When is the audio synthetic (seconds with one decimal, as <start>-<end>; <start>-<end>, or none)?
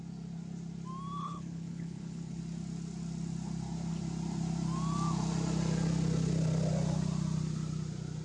1.2-2.4